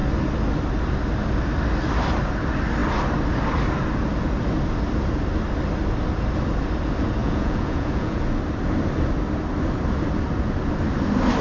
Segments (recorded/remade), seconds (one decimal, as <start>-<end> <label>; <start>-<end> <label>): 0.0-7.2 recorded; 7.2-8.2 remade; 8.2-11.4 recorded